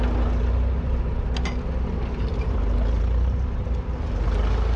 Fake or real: real